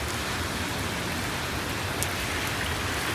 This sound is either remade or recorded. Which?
recorded